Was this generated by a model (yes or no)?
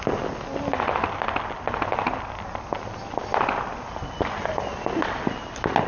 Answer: no